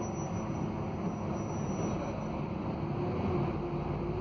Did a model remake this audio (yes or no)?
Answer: no